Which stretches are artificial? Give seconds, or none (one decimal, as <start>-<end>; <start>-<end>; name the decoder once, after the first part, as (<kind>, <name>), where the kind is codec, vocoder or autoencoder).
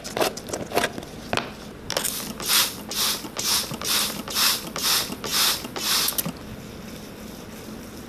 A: none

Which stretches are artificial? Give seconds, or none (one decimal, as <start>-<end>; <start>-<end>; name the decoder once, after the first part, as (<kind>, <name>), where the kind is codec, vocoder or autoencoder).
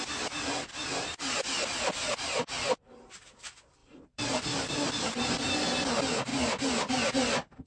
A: 3.8-4.9 (vocoder, BigVGAN v2)